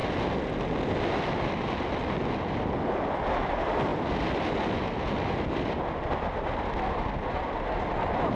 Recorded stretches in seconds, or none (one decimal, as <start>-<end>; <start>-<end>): 0.0-8.4